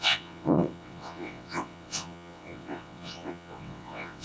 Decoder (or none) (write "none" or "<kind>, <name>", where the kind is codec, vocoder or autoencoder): vocoder, WaveNeXt